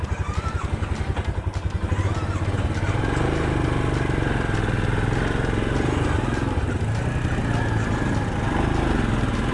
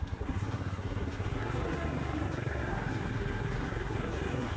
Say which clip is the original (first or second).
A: first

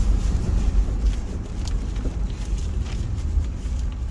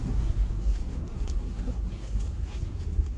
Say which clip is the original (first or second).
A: first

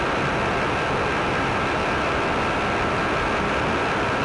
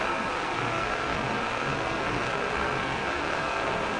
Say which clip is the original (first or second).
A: first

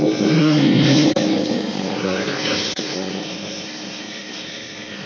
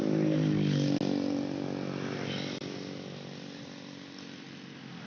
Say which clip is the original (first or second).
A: second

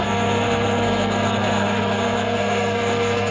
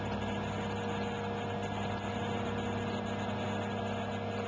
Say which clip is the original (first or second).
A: second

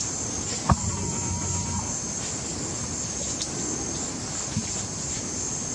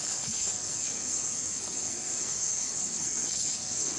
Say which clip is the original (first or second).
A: first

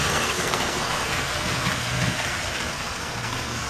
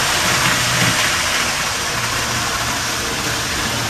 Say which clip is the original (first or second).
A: second